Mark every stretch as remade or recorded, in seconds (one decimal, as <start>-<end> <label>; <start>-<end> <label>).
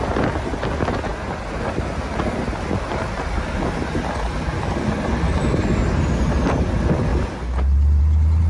0.0-8.5 recorded